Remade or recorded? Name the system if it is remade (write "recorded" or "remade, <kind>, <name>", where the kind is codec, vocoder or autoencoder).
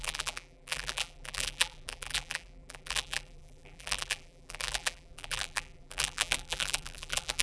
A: remade, vocoder, BigVGAN v2